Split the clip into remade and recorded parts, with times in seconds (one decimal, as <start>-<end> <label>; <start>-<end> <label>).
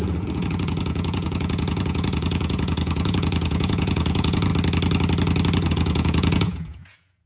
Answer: 0.0-4.5 remade; 4.5-5.7 recorded; 5.7-7.3 remade